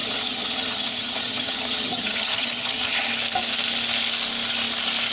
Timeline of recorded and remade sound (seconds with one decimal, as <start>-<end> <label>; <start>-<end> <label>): 0.0-3.1 remade; 3.1-5.1 recorded